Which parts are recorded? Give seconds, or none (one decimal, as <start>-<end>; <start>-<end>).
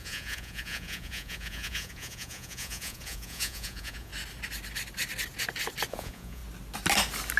4.1-5.9; 6.4-7.4